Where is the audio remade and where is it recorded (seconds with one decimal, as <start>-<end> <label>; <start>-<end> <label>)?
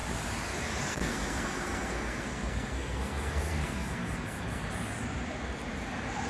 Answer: 0.0-0.9 recorded; 0.9-4.7 remade; 4.7-6.3 recorded